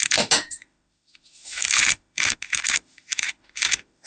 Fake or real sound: fake